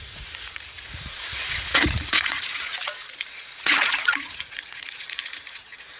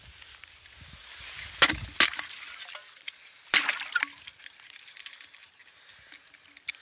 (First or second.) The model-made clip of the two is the first